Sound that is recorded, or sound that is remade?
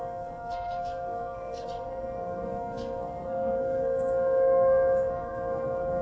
remade